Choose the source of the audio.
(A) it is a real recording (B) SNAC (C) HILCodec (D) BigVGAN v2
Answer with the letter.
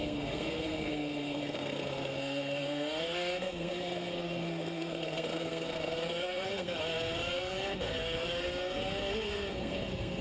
B